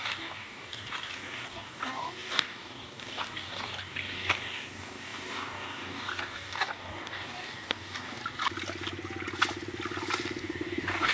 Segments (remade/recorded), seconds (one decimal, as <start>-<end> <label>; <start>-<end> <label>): 0.0-8.2 remade; 8.2-10.4 recorded; 10.4-11.1 remade